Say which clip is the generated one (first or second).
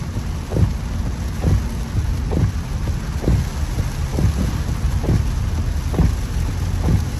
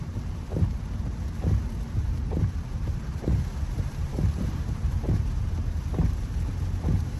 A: second